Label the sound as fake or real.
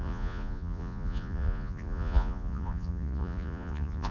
fake